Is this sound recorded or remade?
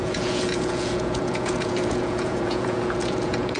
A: remade